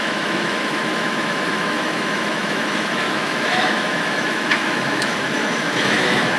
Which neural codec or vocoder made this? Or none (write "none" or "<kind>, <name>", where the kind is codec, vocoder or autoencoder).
autoencoder, DAC-VAE